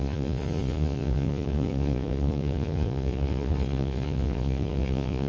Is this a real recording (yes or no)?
no